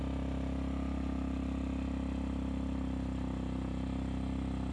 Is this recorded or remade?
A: recorded